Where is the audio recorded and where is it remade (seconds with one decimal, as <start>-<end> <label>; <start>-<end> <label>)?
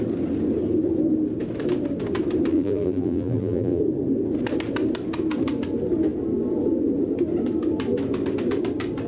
0.0-2.5 recorded; 2.5-3.8 remade; 3.8-9.1 recorded